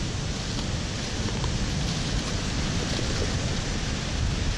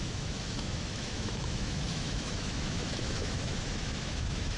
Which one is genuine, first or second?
first